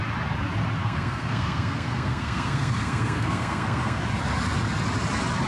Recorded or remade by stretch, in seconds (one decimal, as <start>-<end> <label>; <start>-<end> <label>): 0.0-0.8 recorded; 0.8-4.0 remade; 4.0-5.5 recorded